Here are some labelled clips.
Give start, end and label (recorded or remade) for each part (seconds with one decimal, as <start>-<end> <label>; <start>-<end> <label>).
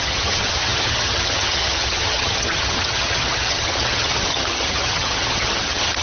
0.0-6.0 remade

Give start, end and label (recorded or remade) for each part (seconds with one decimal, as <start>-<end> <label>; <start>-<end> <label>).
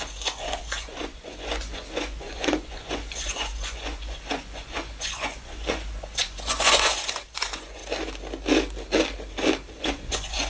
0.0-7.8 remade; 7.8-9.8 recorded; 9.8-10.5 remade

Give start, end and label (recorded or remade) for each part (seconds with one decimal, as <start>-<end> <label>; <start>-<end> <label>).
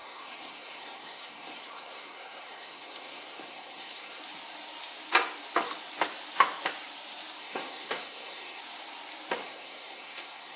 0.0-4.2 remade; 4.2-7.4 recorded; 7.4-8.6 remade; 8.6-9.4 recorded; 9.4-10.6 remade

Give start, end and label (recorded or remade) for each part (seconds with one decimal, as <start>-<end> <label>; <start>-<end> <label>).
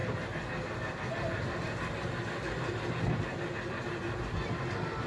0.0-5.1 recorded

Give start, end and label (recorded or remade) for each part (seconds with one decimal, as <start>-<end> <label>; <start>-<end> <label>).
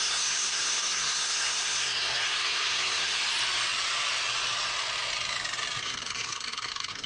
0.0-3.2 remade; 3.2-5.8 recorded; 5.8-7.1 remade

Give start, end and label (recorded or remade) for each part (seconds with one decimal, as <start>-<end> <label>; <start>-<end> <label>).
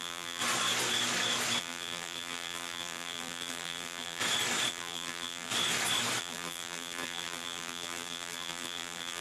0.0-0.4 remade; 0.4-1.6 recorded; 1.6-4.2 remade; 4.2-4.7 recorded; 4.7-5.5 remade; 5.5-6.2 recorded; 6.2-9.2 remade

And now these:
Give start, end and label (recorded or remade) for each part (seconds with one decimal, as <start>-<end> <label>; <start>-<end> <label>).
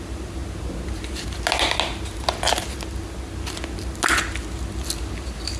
0.0-5.6 recorded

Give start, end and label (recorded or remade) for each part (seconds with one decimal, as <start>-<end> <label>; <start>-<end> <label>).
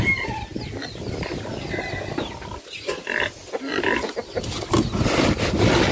0.0-5.9 recorded